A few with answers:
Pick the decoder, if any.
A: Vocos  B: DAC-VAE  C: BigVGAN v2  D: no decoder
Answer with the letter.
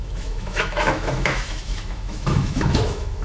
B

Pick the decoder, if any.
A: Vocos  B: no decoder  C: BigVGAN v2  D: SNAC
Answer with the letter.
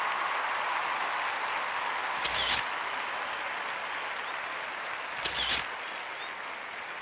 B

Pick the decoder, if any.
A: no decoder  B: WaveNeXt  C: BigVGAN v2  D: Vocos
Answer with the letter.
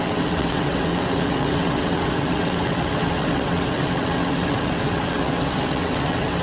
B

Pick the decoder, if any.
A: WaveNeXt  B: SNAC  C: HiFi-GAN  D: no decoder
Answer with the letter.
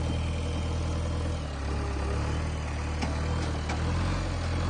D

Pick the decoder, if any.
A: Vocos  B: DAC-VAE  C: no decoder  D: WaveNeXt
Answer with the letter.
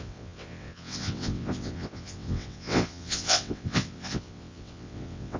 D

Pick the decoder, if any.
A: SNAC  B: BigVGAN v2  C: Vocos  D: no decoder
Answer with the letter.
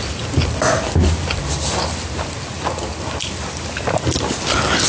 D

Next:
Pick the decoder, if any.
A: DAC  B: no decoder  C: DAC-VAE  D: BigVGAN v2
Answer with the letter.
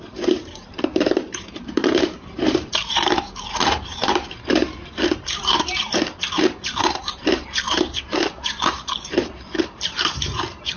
D